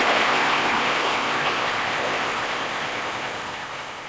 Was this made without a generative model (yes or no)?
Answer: no